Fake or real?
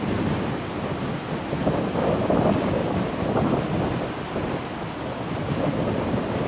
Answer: real